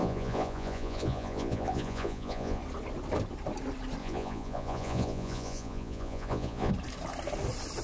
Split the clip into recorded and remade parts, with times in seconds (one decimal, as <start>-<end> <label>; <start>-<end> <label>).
0.0-2.6 remade; 2.6-4.0 recorded; 4.0-6.7 remade; 6.7-7.8 recorded